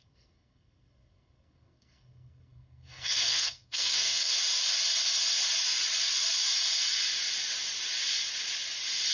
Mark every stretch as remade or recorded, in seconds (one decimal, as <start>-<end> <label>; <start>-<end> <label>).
0.0-4.3 remade; 4.3-9.1 recorded